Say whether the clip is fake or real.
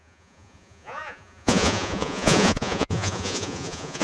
fake